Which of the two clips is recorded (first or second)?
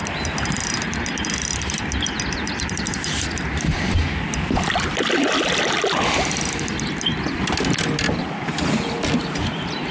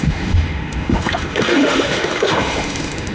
first